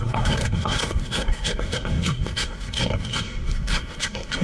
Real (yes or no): no